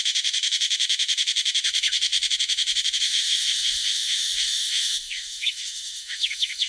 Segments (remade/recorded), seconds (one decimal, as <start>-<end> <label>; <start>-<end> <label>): 0.0-6.7 remade